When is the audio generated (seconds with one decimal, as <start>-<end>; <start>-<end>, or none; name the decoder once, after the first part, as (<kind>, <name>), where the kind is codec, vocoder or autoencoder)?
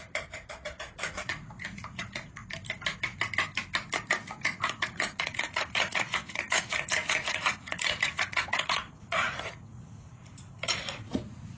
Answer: 0.0-2.4 (vocoder, Vocos); 4.3-11.6